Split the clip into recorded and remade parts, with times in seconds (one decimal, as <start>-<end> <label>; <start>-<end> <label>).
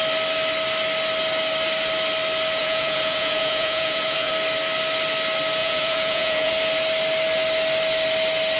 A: 0.0-2.6 recorded; 2.6-4.3 remade; 4.3-5.6 recorded; 5.6-6.5 remade; 6.5-8.6 recorded